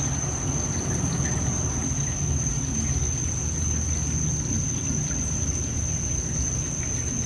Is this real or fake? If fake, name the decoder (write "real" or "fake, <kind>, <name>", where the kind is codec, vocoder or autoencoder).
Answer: real